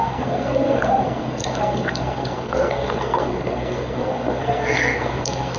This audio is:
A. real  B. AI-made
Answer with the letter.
B